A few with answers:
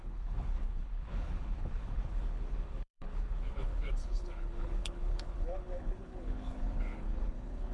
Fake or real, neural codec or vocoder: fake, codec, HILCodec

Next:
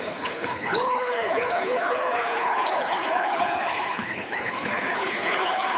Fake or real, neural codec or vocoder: fake, codec, HILCodec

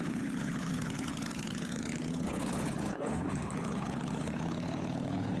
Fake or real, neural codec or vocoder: fake, codec, HILCodec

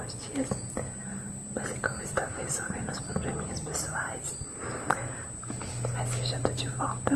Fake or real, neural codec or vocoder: real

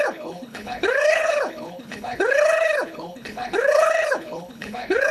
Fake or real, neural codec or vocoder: fake, codec, HILCodec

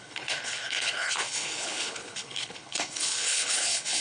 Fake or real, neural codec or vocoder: fake, codec, HILCodec